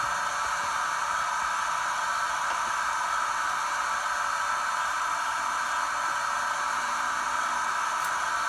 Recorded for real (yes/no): yes